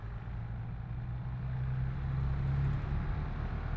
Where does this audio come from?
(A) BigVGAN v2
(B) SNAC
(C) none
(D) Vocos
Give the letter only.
C